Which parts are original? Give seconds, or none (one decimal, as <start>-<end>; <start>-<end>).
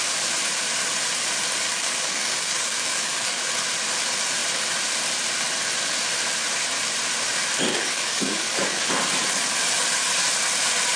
0.0-1.7; 3.5-7.7; 8.8-11.0